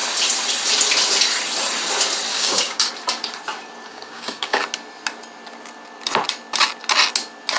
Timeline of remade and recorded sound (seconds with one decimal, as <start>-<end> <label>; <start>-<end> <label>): 0.0-2.3 recorded; 2.3-2.9 remade; 2.9-3.9 recorded; 3.9-4.6 remade; 4.6-7.6 recorded